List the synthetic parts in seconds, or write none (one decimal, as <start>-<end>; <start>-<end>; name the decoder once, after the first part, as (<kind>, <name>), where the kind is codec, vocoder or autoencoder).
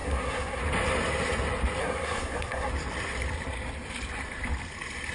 0.0-0.6 (codec, SNAC); 1.8-2.7